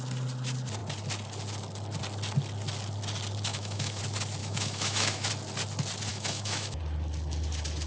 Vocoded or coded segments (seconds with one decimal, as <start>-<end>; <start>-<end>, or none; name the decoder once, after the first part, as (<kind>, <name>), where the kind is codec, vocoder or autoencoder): 3.5-4.0 (autoencoder, DAC-VAE); 4.4-5.3; 6.1-6.8